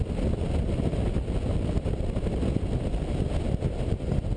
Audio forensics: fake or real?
real